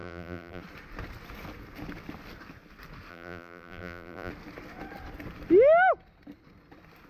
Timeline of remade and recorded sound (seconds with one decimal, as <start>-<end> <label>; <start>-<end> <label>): 0.0-0.6 remade; 0.6-3.1 recorded; 3.1-4.3 remade; 4.3-7.1 recorded